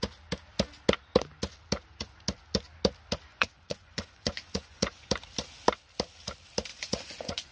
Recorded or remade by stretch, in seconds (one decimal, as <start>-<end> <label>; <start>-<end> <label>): 0.0-3.3 recorded; 3.3-5.1 remade; 5.1-6.7 recorded; 6.7-7.5 remade